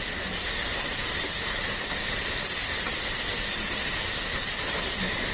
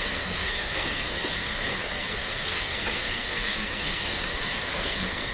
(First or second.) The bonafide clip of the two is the first